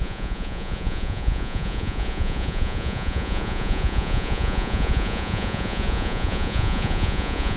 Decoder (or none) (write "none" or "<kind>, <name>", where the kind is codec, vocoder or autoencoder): vocoder, Vocos